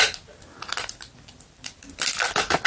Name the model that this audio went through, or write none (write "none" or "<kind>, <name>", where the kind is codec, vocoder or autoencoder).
none